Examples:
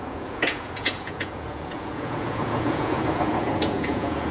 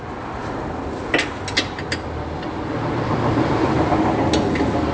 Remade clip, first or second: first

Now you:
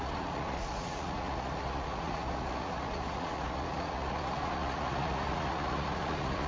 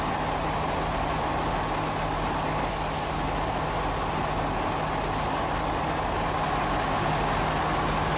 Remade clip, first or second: first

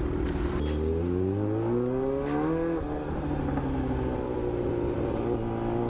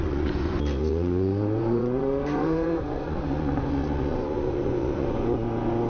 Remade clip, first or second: second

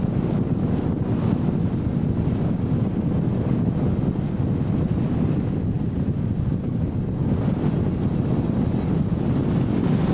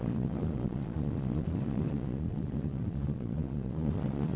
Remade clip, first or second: second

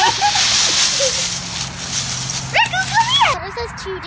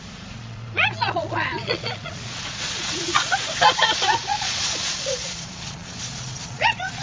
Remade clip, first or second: second